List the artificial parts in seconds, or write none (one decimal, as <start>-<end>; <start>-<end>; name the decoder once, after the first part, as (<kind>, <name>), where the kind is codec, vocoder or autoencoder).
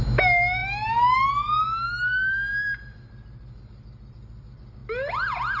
none